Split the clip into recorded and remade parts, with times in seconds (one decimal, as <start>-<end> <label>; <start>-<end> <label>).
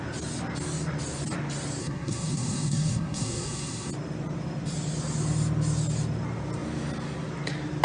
0.0-1.8 recorded; 1.8-3.9 remade; 3.9-7.8 recorded